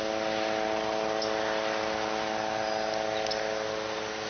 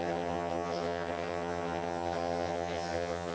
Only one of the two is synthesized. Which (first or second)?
second